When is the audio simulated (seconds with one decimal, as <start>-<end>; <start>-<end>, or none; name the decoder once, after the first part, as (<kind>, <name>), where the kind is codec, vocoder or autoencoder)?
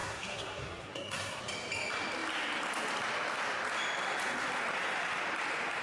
0.0-1.4 (codec, SNAC)